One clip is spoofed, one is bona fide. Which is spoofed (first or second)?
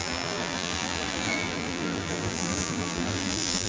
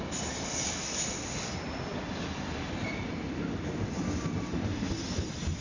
first